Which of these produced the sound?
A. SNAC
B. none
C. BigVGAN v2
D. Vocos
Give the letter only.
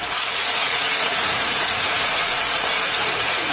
D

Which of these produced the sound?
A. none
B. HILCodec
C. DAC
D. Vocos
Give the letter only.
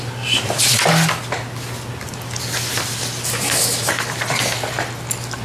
A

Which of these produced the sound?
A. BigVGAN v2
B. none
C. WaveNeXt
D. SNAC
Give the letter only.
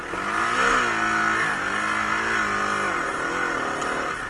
B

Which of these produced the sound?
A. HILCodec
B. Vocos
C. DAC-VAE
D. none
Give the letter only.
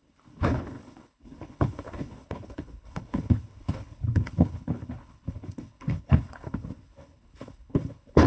A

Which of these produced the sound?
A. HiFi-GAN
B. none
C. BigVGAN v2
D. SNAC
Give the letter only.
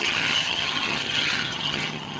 A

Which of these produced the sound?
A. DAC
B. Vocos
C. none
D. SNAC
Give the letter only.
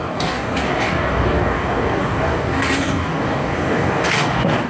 A